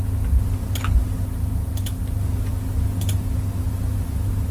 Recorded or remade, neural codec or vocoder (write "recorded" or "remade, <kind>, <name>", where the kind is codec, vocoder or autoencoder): recorded